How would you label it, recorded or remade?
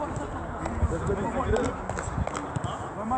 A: recorded